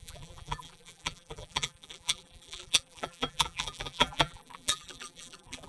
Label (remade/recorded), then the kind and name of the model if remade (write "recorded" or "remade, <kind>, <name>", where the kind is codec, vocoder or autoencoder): remade, vocoder, BigVGAN v2